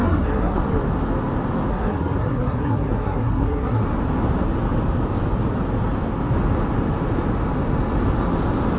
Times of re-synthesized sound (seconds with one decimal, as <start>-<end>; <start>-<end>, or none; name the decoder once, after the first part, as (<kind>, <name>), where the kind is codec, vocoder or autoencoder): 0.0-0.6 (codec, SNAC); 1.7-3.8